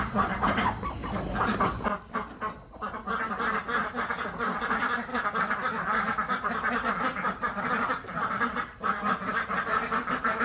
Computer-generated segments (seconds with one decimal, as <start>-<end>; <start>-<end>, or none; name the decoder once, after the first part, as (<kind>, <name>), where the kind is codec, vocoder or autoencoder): none